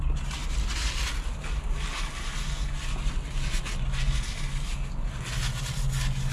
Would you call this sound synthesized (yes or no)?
no